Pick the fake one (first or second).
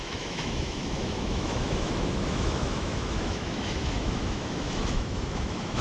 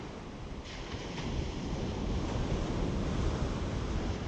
first